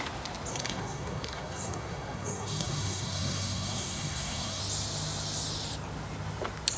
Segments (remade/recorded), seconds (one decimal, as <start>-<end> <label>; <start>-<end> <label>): 0.0-0.5 recorded; 0.5-4.6 remade; 4.6-6.8 recorded